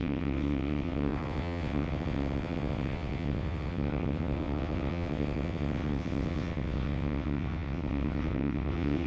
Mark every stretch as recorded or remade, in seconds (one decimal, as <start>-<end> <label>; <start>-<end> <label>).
0.0-9.1 remade